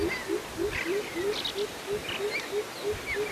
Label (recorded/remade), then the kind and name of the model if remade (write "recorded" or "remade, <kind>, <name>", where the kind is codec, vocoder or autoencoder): recorded